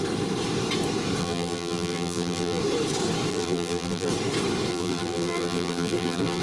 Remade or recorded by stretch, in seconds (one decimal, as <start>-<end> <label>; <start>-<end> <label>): 0.0-1.2 recorded; 1.2-2.6 remade; 2.6-3.3 recorded; 3.3-4.1 remade; 4.1-4.7 recorded; 4.7-6.4 remade